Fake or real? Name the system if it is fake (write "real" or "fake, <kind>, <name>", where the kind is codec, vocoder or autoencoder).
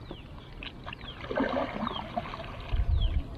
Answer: real